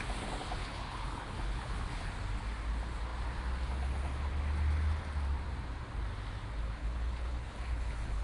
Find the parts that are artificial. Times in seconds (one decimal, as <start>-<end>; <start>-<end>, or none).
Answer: 0.6-2.1; 6.8-8.2